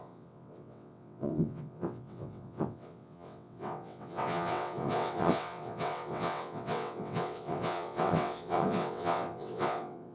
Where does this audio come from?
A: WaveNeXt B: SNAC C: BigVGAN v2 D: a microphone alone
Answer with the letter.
A